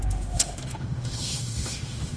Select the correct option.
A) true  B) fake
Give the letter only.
B